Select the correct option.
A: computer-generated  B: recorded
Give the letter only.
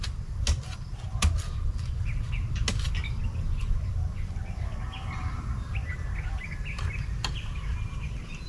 B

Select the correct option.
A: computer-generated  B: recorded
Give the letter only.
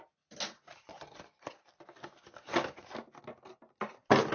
B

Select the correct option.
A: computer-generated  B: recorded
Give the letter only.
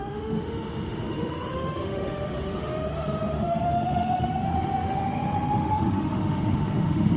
A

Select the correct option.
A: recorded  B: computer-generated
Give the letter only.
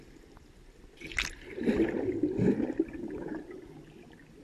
A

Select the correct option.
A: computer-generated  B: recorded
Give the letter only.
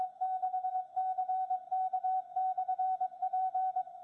B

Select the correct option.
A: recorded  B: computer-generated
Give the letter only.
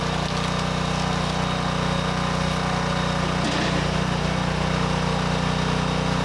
A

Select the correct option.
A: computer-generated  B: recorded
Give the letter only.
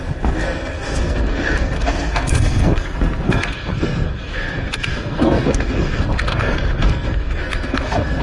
A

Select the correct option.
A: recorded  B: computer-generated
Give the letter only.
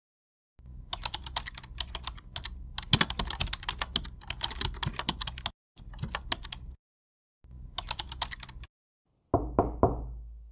A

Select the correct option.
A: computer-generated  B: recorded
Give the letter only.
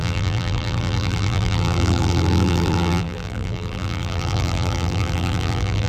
A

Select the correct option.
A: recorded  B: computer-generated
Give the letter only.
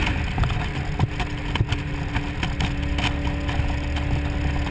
A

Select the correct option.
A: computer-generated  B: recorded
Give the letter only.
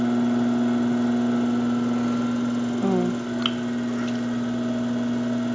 B